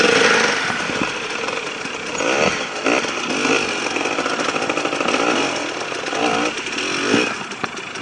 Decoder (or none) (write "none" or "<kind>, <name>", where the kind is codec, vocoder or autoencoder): none